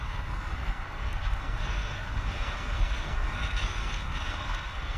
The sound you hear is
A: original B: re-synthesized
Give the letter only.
B